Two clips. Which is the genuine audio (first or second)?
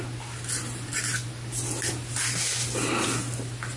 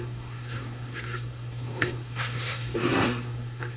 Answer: first